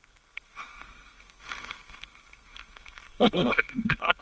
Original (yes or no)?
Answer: no